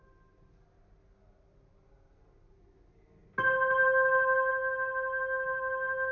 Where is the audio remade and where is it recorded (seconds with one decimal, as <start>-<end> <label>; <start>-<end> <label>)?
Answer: 0.0-6.1 recorded